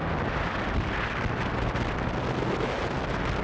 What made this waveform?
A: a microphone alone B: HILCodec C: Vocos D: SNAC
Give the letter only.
A